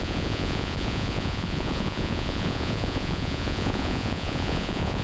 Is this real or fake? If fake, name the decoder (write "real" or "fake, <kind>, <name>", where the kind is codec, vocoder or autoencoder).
fake, vocoder, Vocos